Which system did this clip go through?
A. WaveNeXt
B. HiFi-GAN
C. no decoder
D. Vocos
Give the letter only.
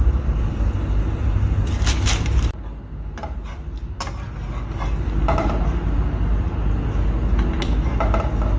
C